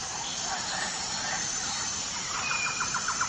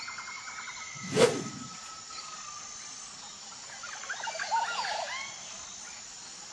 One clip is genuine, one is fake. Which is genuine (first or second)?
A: second